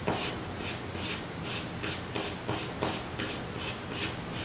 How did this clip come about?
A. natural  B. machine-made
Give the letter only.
A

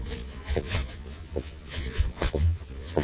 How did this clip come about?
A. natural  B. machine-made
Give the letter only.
B